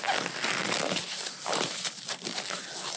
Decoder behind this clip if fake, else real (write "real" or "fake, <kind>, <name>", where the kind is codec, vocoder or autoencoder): real